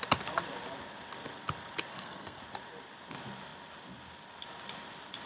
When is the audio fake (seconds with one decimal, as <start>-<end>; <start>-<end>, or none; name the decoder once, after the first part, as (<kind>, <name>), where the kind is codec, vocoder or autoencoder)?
1.9-2.4 (codec, SNAC)